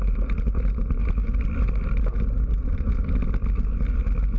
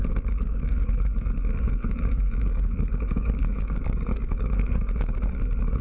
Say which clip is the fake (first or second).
second